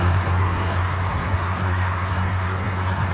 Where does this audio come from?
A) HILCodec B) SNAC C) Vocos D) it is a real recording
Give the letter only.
B